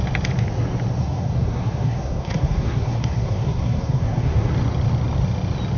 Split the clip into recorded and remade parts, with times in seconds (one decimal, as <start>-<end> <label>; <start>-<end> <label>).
0.0-1.0 recorded; 1.0-4.5 remade; 4.5-5.8 recorded